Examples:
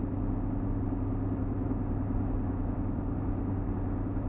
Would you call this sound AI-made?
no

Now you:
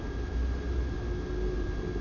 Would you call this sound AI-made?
no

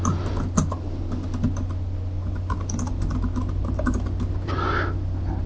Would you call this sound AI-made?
no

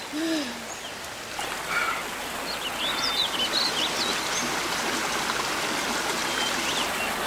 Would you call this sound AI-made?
no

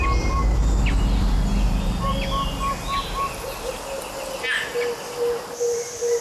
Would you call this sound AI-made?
no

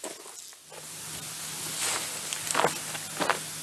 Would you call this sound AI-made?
no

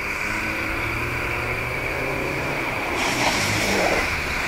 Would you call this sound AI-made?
yes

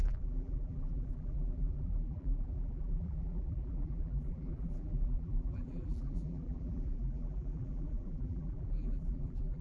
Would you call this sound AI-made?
yes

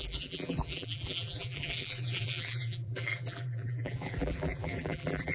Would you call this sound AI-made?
yes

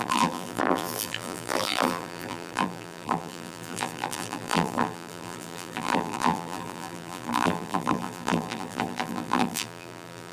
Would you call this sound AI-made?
yes